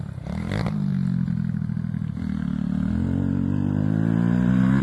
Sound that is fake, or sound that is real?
fake